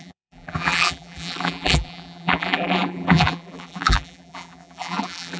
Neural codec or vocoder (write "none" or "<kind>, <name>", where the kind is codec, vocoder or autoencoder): vocoder, BigVGAN v2